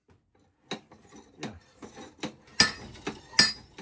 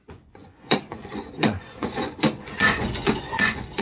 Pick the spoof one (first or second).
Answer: second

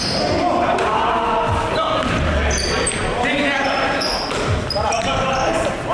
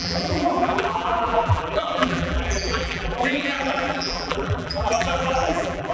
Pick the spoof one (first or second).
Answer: second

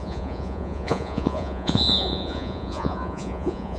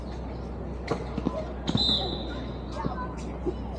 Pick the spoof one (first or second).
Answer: first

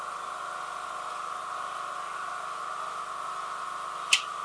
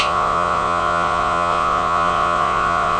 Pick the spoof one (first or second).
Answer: second